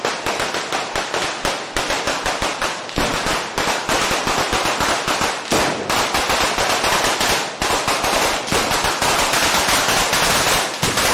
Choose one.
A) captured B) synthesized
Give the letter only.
A